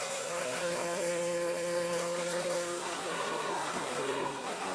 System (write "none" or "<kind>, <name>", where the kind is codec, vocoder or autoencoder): codec, SNAC